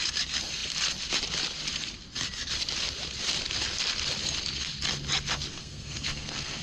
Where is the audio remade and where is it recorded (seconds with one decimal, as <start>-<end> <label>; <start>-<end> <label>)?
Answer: 0.0-5.5 recorded; 5.5-6.6 remade